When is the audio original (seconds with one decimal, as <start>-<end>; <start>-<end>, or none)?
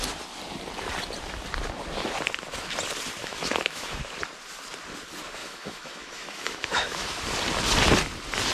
0.0-3.2; 4.0-5.4; 7.2-8.5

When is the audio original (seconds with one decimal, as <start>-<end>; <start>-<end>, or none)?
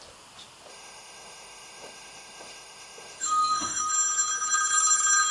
0.0-0.7; 3.9-5.3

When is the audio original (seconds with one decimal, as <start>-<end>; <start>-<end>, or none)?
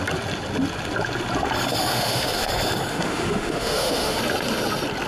0.0-1.9; 2.5-2.9; 4.2-5.1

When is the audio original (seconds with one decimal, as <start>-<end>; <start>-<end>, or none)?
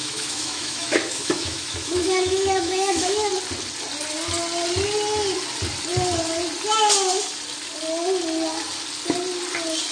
3.3-9.9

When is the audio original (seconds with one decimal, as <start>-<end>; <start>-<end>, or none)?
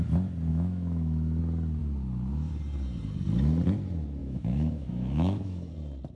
0.0-0.5; 1.4-4.2; 5.7-6.2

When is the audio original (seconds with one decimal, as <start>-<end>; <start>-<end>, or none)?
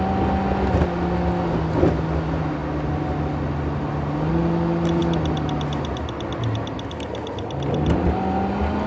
0.0-8.9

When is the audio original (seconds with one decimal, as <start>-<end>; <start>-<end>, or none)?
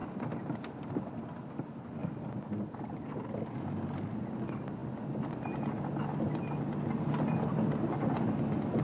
0.0-8.8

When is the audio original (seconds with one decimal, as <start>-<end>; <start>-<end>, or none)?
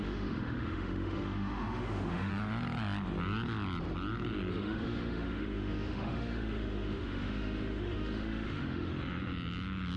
2.3-4.5; 8.9-10.0